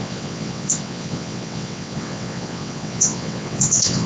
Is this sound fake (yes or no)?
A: yes